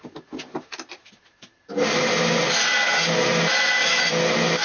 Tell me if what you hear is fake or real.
real